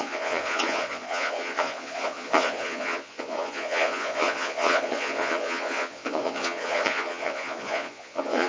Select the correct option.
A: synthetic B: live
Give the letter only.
A